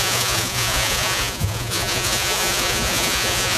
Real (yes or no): no